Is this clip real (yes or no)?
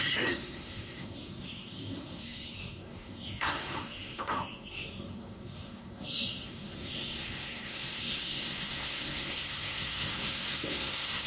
no